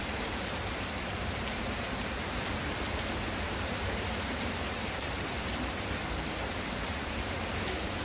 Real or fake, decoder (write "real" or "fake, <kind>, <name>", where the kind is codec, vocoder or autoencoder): fake, vocoder, BigVGAN v2